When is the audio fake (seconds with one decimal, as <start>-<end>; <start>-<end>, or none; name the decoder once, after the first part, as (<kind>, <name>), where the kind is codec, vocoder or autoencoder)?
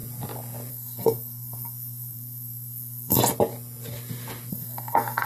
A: 0.7-3.2 (codec, SNAC); 4.5-5.3